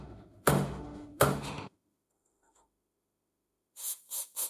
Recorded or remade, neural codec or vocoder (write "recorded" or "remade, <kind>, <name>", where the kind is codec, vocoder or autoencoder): remade, autoencoder, DAC-VAE